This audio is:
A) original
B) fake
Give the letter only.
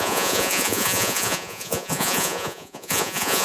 B